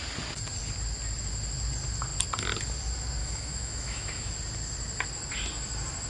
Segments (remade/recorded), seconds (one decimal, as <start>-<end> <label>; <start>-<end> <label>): 0.0-3.2 recorded; 3.2-4.3 remade; 4.3-6.1 recorded

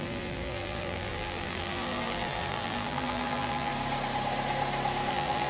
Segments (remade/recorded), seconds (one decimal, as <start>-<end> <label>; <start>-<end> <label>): 0.0-3.7 remade; 3.7-5.1 recorded; 5.1-5.5 remade

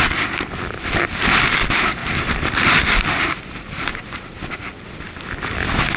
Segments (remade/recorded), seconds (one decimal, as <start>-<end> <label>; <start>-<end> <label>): 0.0-2.0 recorded; 2.0-4.8 remade; 4.8-6.0 recorded

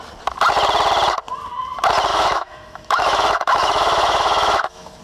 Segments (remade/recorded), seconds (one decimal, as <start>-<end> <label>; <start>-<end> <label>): 0.0-2.1 recorded; 2.1-5.0 remade

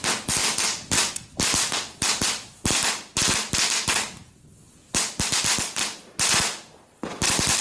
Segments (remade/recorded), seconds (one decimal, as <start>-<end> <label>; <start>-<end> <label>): 0.0-7.6 recorded

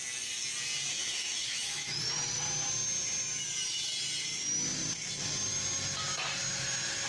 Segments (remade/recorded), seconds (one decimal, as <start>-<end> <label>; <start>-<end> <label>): 0.0-0.9 recorded; 0.9-2.0 remade; 2.0-7.1 recorded